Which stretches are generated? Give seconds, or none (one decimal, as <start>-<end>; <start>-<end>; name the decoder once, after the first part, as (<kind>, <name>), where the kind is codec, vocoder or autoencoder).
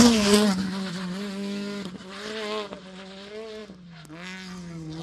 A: none